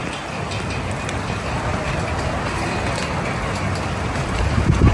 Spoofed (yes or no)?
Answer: no